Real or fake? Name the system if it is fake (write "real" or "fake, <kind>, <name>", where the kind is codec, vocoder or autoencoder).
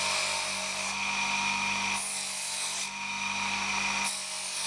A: real